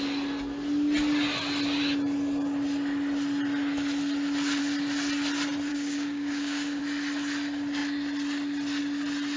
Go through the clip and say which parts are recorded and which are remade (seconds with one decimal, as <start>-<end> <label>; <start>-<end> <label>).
0.0-5.7 recorded; 5.7-6.8 remade; 6.8-9.4 recorded